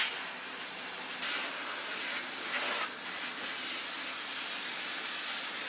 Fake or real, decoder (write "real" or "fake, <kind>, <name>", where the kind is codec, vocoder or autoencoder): real